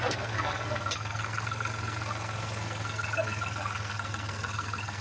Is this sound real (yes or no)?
no